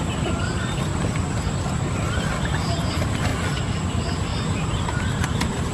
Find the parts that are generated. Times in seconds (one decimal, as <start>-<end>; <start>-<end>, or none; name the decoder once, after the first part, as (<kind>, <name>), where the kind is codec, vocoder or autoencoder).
0.0-0.9 (vocoder, BigVGAN v2); 2.4-3.3; 3.9-5.7